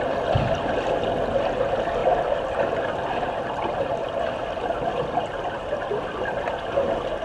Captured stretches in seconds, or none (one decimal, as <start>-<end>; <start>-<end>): 0.0-7.2